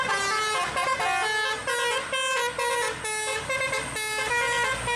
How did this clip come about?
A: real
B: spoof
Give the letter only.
A